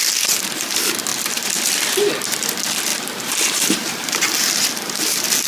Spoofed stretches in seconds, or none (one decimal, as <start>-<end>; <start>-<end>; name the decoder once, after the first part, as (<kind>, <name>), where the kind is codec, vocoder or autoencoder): 1.1-2.1 (vocoder, BigVGAN v2); 2.9-4.4